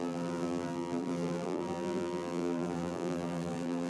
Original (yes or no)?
no